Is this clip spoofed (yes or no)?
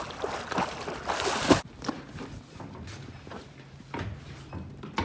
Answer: no